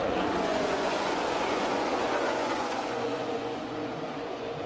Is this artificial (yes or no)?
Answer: yes